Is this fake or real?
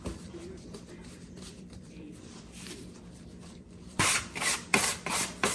fake